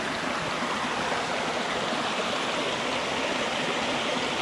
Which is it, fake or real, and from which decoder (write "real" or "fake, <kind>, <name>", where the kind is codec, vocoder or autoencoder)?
real